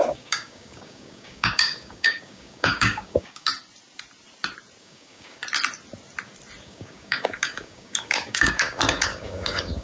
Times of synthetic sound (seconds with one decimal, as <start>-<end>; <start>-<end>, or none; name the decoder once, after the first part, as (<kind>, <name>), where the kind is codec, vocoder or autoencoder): 0.0-3.5 (codec, DAC); 4.8-5.4; 6.6-9.8